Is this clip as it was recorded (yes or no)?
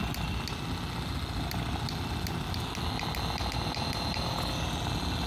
yes